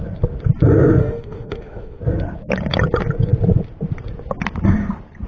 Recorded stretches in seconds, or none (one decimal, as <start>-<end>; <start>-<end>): 0.0-1.0; 2.0-5.3